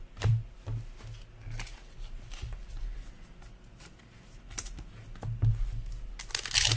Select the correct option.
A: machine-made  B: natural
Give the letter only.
B